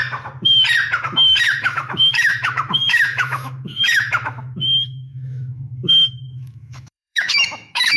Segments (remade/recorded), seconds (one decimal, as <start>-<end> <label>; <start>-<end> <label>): 0.0-1.0 recorded; 1.0-8.0 remade